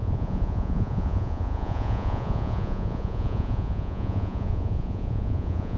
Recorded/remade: remade